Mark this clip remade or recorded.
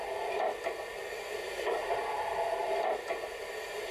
recorded